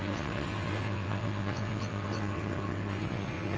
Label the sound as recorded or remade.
remade